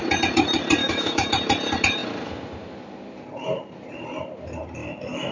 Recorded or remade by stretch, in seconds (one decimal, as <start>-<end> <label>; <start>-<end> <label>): 0.0-0.8 recorded; 0.8-1.3 remade; 1.3-4.8 recorded; 4.8-5.3 remade